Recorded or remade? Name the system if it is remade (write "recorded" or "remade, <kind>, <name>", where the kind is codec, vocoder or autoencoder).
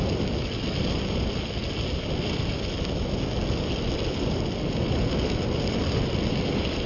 recorded